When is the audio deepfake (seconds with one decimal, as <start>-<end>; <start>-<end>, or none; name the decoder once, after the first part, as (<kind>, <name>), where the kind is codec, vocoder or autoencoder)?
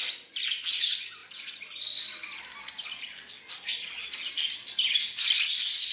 none